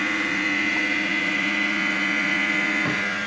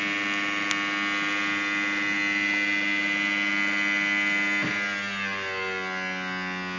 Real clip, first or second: second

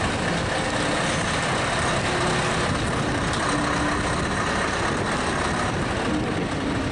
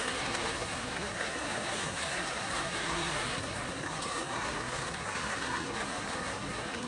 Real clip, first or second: first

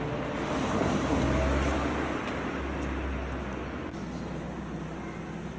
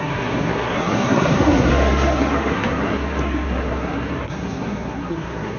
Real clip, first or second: first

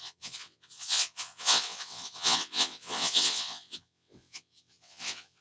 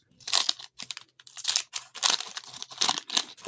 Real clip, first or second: second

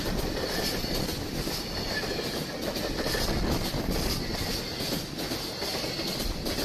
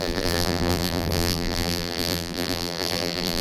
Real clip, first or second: first